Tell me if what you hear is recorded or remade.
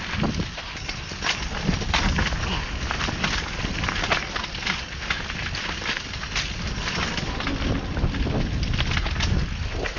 recorded